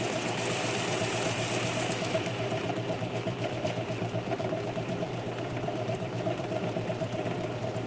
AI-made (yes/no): yes